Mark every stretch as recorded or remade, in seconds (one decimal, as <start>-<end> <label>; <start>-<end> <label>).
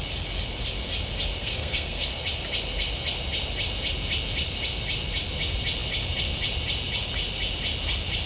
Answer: 0.0-1.4 recorded; 1.4-2.1 remade; 2.1-8.3 recorded